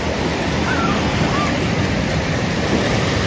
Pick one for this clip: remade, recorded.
recorded